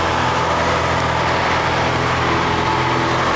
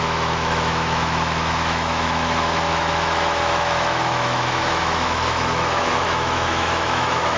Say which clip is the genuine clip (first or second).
first